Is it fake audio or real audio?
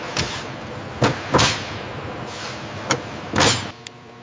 fake